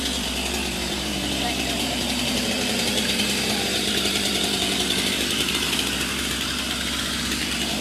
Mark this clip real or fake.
fake